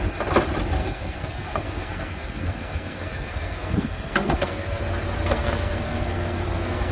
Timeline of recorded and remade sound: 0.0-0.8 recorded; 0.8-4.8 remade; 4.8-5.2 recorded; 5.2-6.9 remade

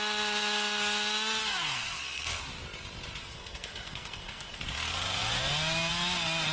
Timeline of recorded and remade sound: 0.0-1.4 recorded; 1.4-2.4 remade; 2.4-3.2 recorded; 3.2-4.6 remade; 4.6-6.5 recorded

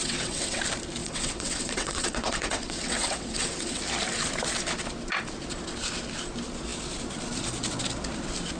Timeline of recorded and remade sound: 0.0-0.6 remade; 0.6-1.0 recorded; 1.0-3.8 remade; 3.8-8.6 recorded

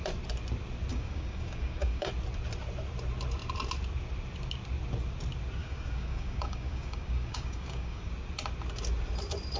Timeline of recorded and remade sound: 0.0-0.9 recorded; 0.9-2.1 remade; 2.1-5.6 recorded; 5.6-8.1 remade; 8.1-9.6 recorded

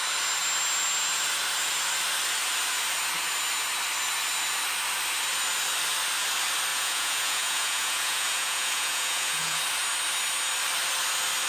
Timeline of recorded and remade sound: 0.0-6.7 recorded; 6.7-9.6 remade; 9.6-11.5 recorded